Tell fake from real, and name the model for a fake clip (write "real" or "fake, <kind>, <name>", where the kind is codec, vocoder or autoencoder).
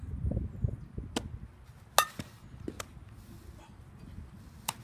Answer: real